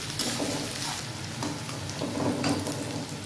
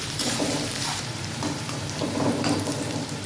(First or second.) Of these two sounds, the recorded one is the first